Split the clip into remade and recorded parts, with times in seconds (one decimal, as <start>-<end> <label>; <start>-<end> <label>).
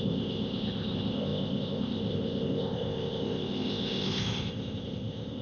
0.0-5.4 remade